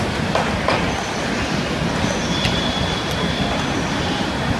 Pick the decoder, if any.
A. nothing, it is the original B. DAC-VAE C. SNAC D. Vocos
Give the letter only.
A